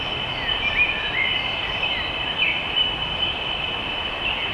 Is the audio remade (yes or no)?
no